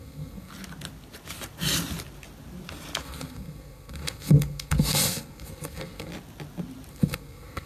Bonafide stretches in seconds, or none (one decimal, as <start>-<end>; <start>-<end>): 0.5-3.0; 6.1-6.9